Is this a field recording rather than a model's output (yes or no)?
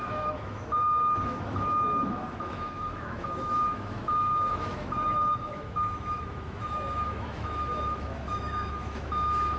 no